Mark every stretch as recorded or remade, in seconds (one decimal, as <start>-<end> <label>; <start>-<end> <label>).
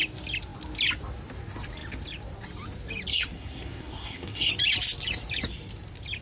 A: 0.0-3.1 recorded; 3.1-4.5 remade; 4.5-6.2 recorded